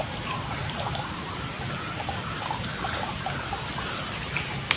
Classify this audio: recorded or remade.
recorded